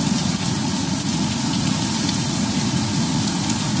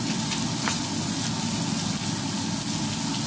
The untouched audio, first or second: second